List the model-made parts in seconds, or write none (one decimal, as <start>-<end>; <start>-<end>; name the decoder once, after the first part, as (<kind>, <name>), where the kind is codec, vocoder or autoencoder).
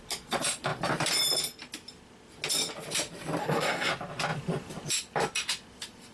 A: 3.4-3.9 (codec, SNAC)